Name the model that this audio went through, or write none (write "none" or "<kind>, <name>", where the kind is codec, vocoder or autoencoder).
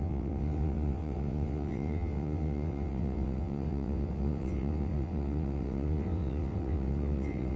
vocoder, WaveNeXt